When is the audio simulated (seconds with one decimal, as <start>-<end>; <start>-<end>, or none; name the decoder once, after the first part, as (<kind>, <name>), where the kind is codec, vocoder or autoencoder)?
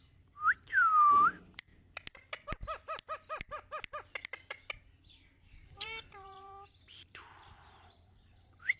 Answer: 0.0-1.7 (vocoder, BigVGAN v2); 5.6-8.8